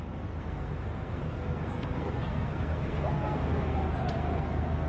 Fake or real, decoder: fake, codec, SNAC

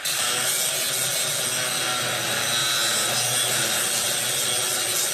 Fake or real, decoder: real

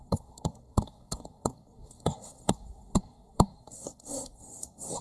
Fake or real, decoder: fake, codec, SNAC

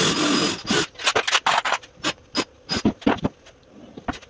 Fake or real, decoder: real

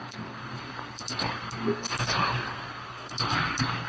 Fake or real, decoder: fake, codec, SNAC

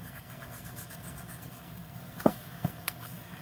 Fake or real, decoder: fake, codec, SNAC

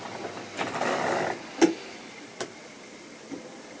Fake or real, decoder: real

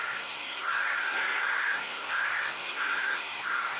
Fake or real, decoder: fake, codec, SNAC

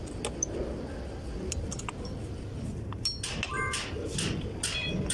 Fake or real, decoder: real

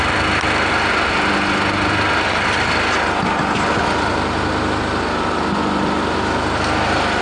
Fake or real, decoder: real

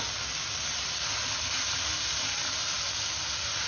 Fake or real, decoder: real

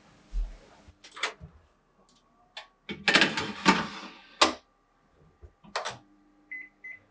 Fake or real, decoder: real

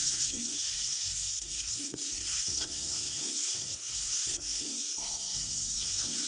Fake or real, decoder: fake, codec, SNAC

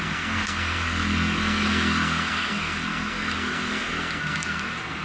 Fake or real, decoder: fake, codec, SNAC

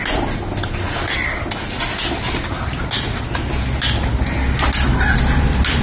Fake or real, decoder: real